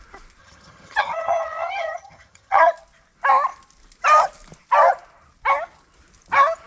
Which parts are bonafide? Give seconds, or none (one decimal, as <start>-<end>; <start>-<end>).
0.0-0.4; 2.7-6.7

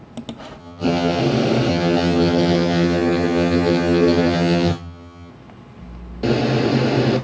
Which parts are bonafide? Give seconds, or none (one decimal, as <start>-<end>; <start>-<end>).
0.0-0.6; 1.2-1.7; 5.3-7.2

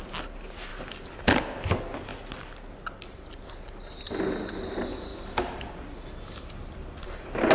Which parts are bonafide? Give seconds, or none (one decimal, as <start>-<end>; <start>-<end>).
0.0-7.5